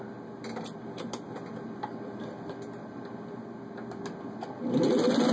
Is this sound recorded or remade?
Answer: recorded